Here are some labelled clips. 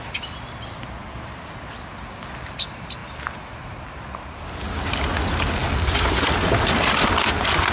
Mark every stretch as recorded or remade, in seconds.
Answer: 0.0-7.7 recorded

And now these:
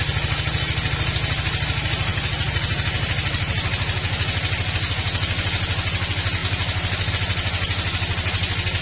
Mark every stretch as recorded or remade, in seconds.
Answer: 0.0-8.8 recorded

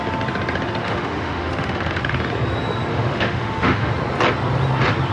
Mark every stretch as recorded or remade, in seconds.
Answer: 0.0-0.8 recorded; 0.8-2.0 remade; 2.0-2.9 recorded; 2.9-3.9 remade; 3.9-5.1 recorded

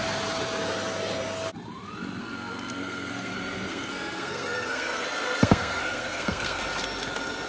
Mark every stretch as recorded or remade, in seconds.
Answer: 0.0-2.2 recorded; 2.2-3.3 remade; 3.3-3.7 recorded; 3.7-6.6 remade; 6.6-7.5 recorded

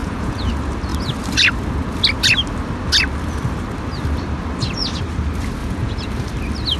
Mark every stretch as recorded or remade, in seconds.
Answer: 0.0-0.5 remade; 0.5-5.6 recorded; 5.6-6.1 remade; 6.1-6.8 recorded

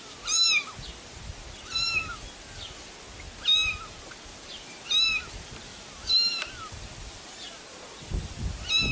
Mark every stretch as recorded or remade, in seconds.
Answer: 0.0-8.9 recorded

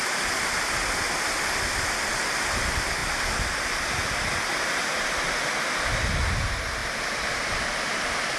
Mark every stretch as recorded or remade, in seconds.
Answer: 0.0-8.4 recorded